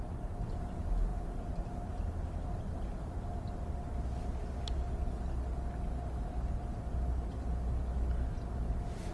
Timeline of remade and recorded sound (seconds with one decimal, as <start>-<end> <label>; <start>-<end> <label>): 0.0-9.1 recorded